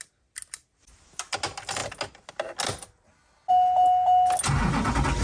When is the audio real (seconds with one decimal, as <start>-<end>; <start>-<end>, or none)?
0.0-5.2